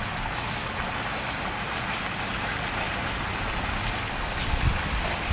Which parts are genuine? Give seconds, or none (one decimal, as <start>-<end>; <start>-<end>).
0.0-5.3

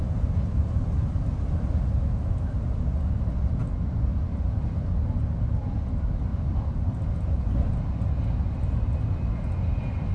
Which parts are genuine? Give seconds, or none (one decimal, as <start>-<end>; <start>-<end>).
0.0-10.1